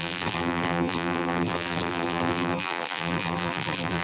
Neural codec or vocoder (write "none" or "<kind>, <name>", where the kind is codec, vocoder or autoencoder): vocoder, BigVGAN v2